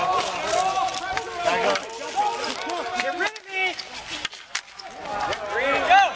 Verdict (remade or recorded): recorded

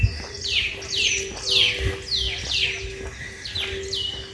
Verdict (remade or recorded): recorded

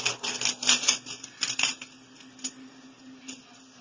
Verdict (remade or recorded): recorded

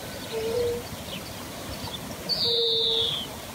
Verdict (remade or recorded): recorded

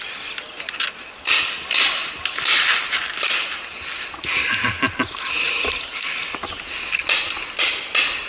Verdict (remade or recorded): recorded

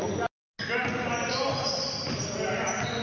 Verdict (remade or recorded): recorded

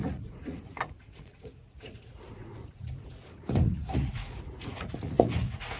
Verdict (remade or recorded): remade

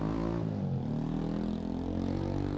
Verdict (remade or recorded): recorded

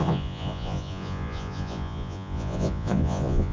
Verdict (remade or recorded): remade